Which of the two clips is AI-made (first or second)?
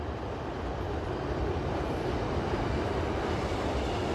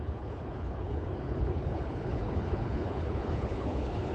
second